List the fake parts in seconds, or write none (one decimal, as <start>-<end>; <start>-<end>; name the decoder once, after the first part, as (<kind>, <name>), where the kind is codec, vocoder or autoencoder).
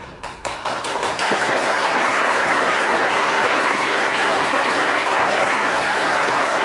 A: 0.0-6.6 (codec, SNAC)